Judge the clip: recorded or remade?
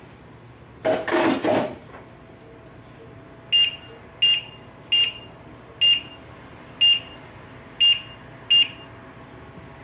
recorded